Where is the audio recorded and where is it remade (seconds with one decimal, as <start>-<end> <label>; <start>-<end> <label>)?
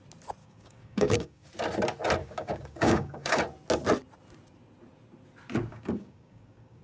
0.0-0.4 recorded; 0.4-1.5 remade; 1.5-2.2 recorded; 2.2-3.4 remade; 3.4-5.7 recorded; 5.7-6.8 remade